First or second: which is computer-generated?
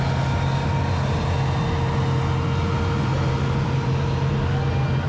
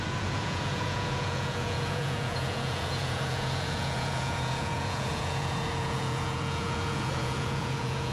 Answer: second